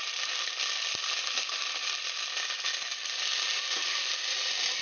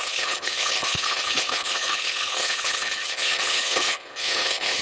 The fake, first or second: second